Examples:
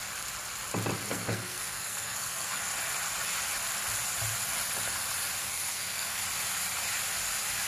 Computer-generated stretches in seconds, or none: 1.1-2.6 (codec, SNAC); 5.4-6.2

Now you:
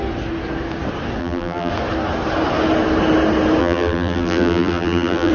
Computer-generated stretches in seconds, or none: 1.2-1.7 (vocoder, BigVGAN v2); 3.6-5.3

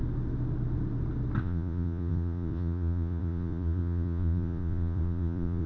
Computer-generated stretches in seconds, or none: 1.4-5.7 (vocoder, Vocos)

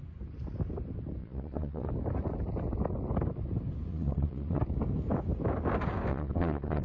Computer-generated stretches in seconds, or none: 1.2-1.9 (vocoder, Vocos); 3.9-4.6; 6.1-6.8

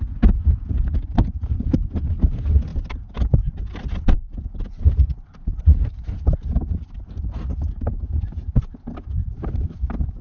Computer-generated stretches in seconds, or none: none